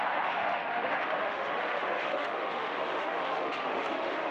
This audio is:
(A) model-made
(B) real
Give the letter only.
A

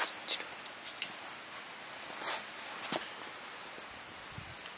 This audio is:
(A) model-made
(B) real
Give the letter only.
B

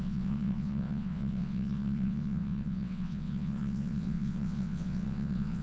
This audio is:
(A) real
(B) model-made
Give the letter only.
B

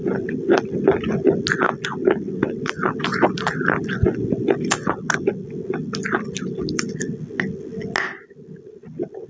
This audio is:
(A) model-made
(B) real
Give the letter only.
B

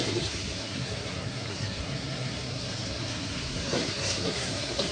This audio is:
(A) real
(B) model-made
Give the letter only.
B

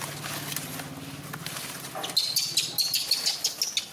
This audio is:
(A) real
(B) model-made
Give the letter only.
A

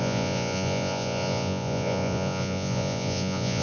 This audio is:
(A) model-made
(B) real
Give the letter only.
A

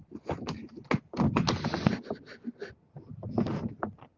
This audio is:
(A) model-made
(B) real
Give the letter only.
B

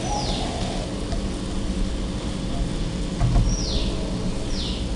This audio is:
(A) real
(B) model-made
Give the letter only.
A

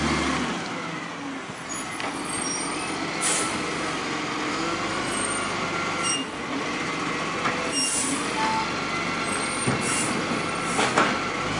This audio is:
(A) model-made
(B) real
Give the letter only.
B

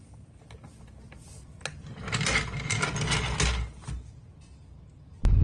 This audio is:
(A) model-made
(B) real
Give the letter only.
B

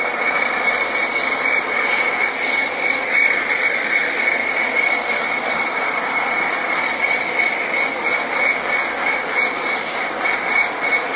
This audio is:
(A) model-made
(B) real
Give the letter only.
B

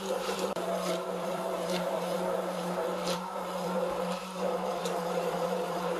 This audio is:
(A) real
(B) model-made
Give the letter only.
B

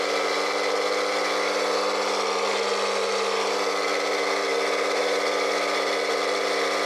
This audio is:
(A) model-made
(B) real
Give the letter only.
B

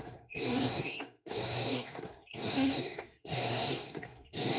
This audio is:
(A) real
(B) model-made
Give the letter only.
B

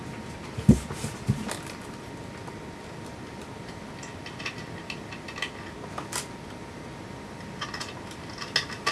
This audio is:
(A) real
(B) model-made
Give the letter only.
A